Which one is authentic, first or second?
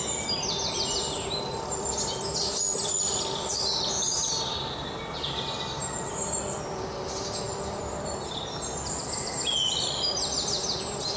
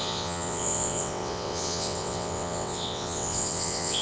first